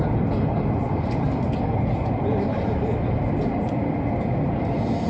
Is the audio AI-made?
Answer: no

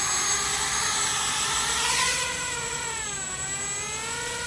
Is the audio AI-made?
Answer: no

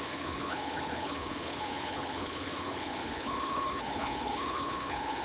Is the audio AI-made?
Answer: yes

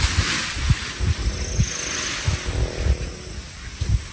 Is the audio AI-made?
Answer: no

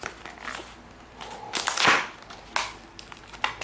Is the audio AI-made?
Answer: no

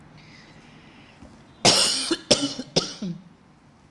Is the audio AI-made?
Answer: no